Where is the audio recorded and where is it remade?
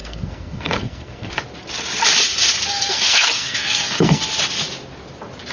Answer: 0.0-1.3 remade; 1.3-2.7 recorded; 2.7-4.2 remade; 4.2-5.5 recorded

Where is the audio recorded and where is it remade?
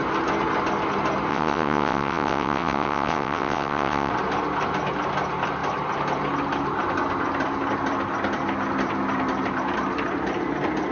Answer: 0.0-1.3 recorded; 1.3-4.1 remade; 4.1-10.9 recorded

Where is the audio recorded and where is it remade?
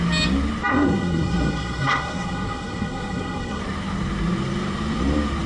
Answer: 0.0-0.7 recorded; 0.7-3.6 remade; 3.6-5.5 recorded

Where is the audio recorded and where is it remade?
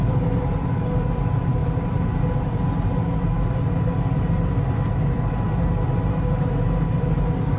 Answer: 0.0-7.6 remade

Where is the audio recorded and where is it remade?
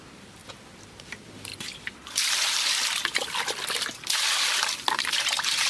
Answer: 0.0-0.4 remade; 0.4-1.0 recorded; 1.0-1.5 remade; 1.5-4.9 recorded; 4.9-5.7 remade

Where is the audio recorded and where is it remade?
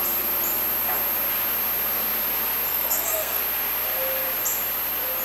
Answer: 0.0-2.7 recorded; 2.7-3.4 remade; 3.4-5.2 recorded